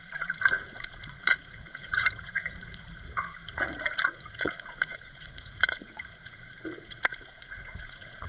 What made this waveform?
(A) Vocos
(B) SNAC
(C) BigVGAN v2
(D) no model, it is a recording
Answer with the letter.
A